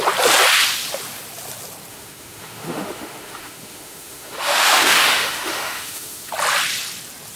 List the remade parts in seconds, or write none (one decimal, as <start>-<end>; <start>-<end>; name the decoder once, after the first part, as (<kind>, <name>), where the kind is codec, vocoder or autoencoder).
1.9-6.3 (autoencoder, DAC-VAE)